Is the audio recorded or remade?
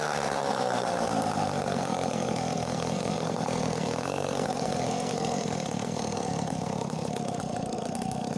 remade